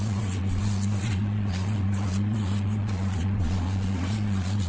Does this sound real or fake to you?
fake